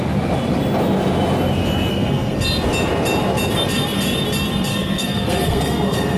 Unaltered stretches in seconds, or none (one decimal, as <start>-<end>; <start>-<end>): 0.0-1.9; 2.4-4.7